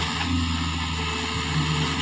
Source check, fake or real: real